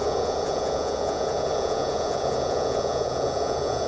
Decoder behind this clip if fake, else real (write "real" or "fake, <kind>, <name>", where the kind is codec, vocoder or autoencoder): fake, vocoder, Vocos